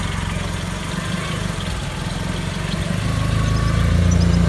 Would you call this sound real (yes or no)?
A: yes